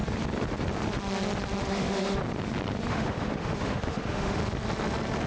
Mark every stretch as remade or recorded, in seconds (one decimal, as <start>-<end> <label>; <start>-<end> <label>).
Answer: 0.0-1.7 recorded; 1.7-2.2 remade; 2.2-2.9 recorded; 2.9-4.4 remade; 4.4-5.3 recorded